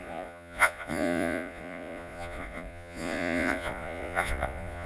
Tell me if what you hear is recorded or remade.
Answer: remade